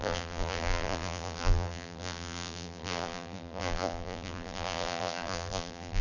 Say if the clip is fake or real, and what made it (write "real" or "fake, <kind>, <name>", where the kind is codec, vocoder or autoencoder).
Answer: fake, vocoder, BigVGAN v2